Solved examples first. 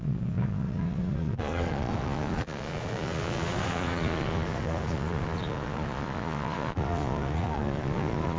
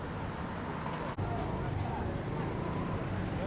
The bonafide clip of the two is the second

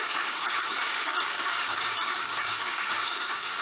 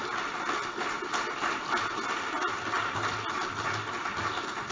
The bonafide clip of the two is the second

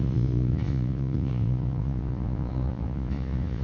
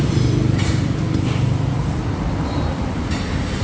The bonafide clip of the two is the second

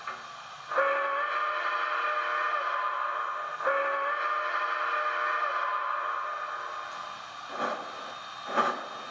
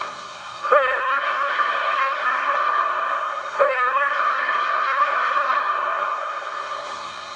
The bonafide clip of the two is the first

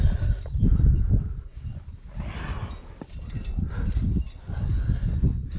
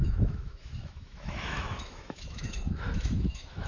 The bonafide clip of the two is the first